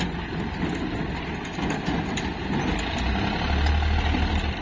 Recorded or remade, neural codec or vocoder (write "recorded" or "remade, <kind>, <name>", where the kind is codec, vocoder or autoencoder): recorded